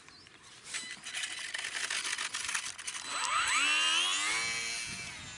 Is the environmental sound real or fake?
real